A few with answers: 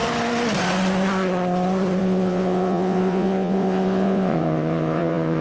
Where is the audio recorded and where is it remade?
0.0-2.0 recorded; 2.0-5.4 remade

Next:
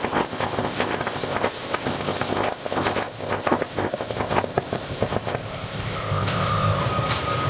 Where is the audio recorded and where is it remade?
0.0-6.8 remade; 6.8-7.5 recorded

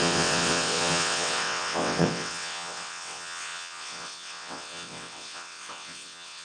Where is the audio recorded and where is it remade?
0.0-6.4 remade